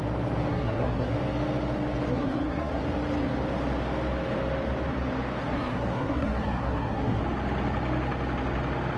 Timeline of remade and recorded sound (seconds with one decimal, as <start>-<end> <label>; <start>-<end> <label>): 0.0-0.5 recorded; 0.5-1.1 remade; 1.1-2.1 recorded; 2.1-2.8 remade; 2.8-5.4 recorded; 5.4-7.2 remade; 7.2-9.0 recorded